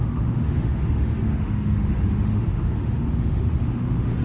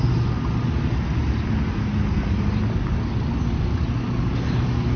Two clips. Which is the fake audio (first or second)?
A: first